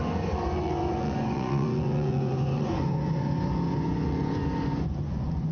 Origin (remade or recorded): remade